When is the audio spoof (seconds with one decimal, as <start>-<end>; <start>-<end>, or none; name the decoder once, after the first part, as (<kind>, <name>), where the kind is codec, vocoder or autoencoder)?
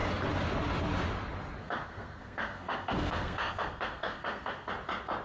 1.6-4.7 (codec, SNAC)